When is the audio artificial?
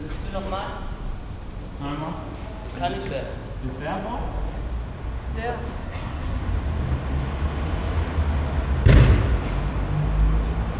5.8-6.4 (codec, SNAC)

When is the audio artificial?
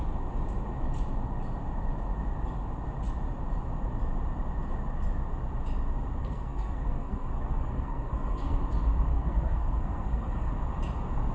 6.2-8.6 (codec, SNAC); 9.1-10.5